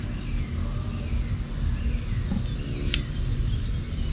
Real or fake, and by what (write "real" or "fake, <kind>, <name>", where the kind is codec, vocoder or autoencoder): real